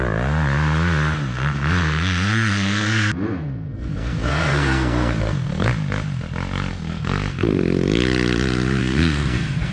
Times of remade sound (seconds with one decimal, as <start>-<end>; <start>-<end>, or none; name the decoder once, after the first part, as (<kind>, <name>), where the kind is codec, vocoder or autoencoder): 1.3-5.7 (codec, SNAC); 6.7-7.6; 8.8-9.7